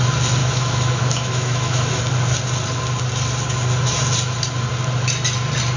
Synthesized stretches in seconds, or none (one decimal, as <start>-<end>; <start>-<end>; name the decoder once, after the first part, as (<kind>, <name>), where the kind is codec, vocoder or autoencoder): 0.4-2.0 (autoencoder, DAC-VAE)